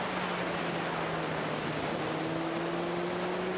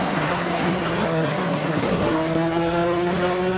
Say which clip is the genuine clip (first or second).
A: first